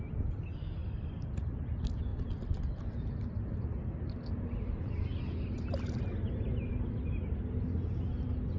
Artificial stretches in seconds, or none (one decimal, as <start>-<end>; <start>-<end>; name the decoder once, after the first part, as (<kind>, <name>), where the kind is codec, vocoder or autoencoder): none